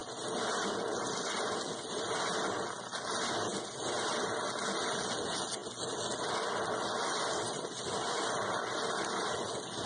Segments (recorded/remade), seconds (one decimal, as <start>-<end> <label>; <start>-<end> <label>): 0.0-9.9 recorded